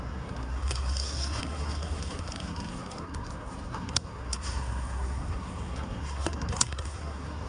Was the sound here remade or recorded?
remade